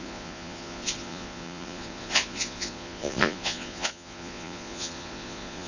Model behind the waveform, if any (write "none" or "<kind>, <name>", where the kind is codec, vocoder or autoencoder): vocoder, Vocos